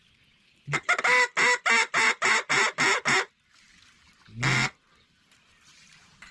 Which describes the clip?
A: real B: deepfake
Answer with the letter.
A